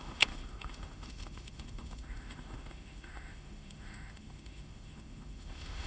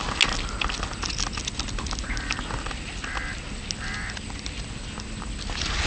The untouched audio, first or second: second